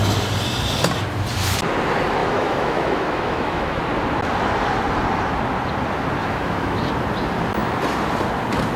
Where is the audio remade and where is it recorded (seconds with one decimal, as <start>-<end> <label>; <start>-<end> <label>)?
0.0-2.2 recorded; 2.2-3.8 remade; 3.8-6.2 recorded; 6.2-6.9 remade; 6.9-8.8 recorded